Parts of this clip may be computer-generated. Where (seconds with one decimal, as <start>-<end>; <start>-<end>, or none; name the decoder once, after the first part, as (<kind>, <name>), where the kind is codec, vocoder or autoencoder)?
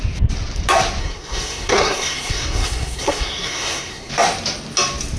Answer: 1.0-4.1 (codec, SNAC)